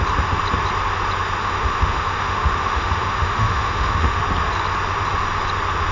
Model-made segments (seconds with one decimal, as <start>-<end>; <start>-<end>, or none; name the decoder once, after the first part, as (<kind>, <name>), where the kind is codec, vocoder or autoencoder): 1.4-4.2 (autoencoder, DAC-VAE)